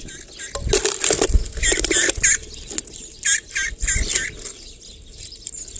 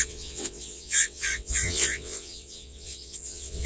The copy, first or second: second